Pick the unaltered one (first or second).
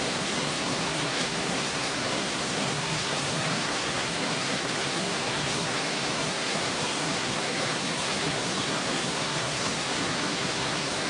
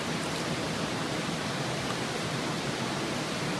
second